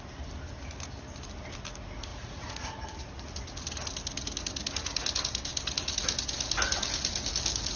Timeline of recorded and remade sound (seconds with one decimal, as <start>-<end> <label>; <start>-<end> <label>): 0.0-2.1 recorded; 2.1-2.7 remade; 2.7-7.8 recorded